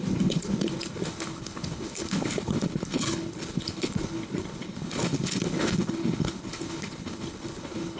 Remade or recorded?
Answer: remade